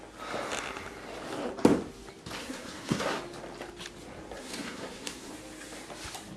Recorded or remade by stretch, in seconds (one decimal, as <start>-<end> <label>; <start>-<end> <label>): 0.0-2.4 recorded; 2.4-3.2 remade; 3.2-4.4 recorded; 4.4-5.3 remade; 5.3-6.4 recorded

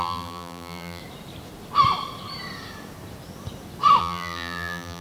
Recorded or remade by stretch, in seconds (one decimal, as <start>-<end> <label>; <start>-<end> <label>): 0.0-1.0 remade; 1.0-4.0 recorded; 4.0-5.0 remade

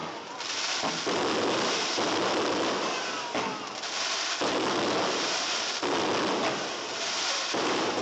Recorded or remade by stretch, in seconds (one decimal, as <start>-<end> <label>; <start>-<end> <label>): 0.0-6.9 recorded; 6.9-8.0 remade

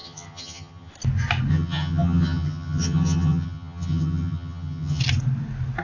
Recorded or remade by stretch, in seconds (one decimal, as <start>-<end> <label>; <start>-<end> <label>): 0.0-0.9 remade; 0.9-1.5 recorded; 1.5-5.0 remade; 5.0-5.8 recorded

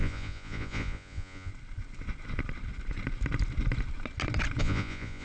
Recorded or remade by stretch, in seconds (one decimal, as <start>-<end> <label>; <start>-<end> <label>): 0.0-1.5 remade; 1.5-4.6 recorded; 4.6-5.2 remade